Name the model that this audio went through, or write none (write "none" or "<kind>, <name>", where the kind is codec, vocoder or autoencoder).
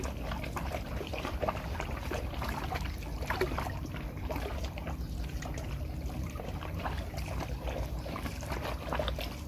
none